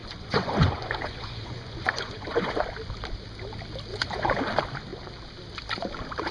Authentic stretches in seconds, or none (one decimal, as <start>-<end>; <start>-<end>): 2.5-3.9; 4.4-6.3